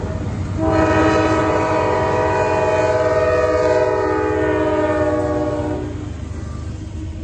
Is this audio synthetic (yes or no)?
no